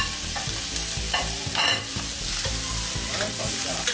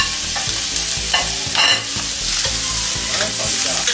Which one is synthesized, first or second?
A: first